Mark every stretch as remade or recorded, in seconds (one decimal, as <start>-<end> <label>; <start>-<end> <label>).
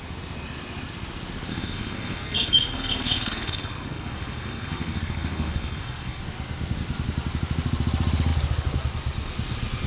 0.0-1.5 recorded; 1.5-6.2 remade; 6.2-9.9 recorded